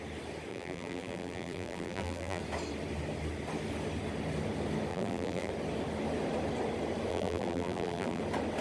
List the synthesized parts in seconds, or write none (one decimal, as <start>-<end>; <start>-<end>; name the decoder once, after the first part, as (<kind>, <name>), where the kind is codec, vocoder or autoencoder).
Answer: 0.5-2.4 (vocoder, BigVGAN v2); 4.9-5.5; 7.1-8.2